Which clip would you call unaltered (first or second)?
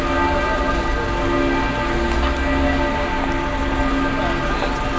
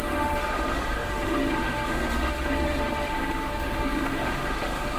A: first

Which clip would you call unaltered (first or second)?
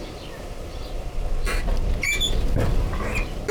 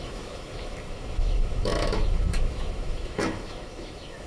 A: first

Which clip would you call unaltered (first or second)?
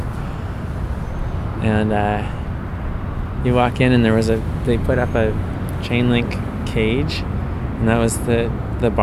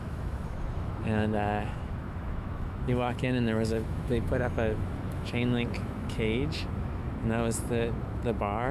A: first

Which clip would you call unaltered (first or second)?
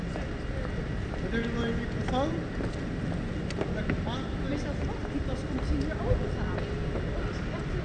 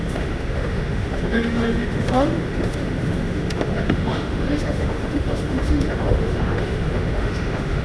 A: first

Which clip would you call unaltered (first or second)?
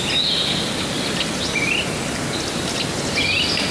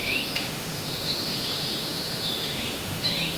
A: first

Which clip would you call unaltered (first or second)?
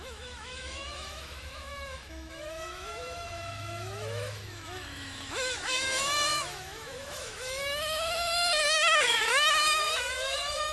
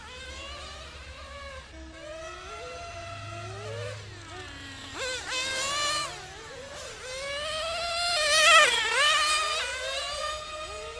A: second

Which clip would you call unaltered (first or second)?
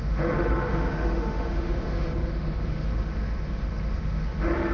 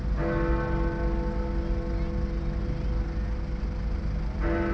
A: second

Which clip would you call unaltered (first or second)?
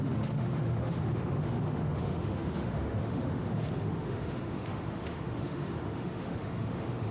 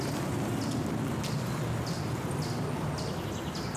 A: second